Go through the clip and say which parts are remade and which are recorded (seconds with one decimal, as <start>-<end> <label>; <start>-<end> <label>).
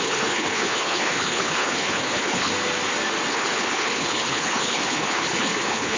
0.0-2.5 remade; 2.5-3.3 recorded; 3.3-6.0 remade